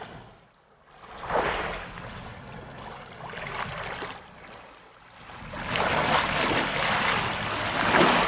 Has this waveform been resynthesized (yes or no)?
no